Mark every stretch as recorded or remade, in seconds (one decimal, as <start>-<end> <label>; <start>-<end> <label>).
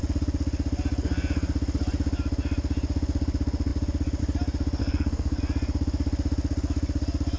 0.0-4.8 recorded; 4.8-5.4 remade; 5.4-7.4 recorded